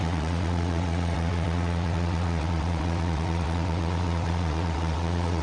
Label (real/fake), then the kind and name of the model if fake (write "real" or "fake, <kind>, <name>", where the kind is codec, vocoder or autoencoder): fake, vocoder, WaveNeXt